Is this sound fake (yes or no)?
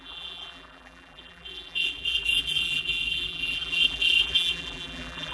yes